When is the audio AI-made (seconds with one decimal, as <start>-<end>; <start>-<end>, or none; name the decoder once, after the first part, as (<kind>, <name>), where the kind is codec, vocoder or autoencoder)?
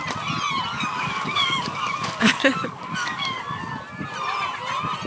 0.7-3.6 (codec, DAC)